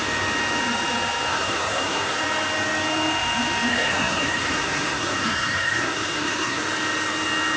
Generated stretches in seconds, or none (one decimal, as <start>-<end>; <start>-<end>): 1.3-2.2; 3.7-6.6